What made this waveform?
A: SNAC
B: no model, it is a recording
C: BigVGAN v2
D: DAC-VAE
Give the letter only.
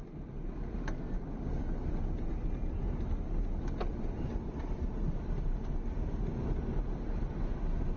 B